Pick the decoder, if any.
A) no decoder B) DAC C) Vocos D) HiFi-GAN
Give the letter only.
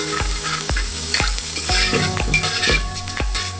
B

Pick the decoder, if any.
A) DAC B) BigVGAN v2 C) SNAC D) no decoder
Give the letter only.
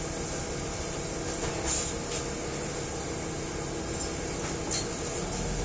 D